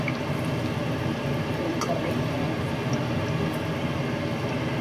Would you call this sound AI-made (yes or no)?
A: no